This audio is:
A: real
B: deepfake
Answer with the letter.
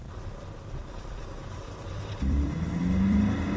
B